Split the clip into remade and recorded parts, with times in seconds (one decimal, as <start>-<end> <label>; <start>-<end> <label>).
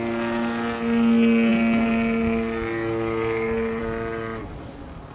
0.0-5.1 recorded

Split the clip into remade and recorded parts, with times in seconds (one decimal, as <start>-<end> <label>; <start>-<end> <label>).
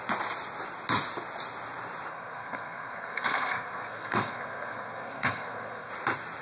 0.0-2.1 recorded; 2.1-5.9 remade; 5.9-6.4 recorded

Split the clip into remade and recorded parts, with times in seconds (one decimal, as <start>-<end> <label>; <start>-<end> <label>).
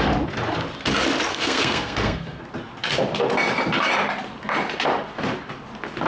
0.0-1.3 recorded; 1.3-2.4 remade; 2.4-6.1 recorded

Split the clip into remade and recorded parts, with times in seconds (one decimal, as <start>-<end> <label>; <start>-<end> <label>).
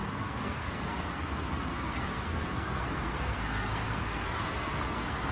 0.0-5.3 remade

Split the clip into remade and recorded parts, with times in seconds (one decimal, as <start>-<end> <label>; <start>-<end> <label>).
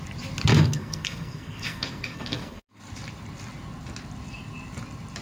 0.0-0.5 recorded; 0.5-2.8 remade; 2.8-5.2 recorded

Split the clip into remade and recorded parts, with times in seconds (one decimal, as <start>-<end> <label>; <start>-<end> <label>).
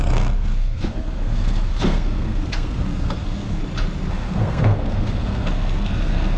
0.0-3.6 remade; 3.6-4.1 recorded; 4.1-6.4 remade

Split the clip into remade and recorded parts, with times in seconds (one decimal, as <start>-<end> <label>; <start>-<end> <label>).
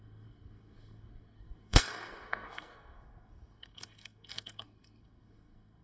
0.0-5.8 remade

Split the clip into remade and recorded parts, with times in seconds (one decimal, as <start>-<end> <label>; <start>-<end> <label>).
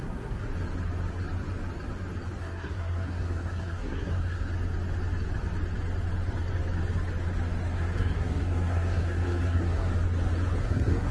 0.0-0.5 remade; 0.5-2.4 recorded; 2.4-4.5 remade; 4.5-7.7 recorded; 7.7-9.9 remade; 9.9-10.6 recorded; 10.6-11.1 remade